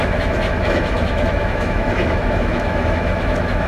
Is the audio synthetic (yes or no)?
yes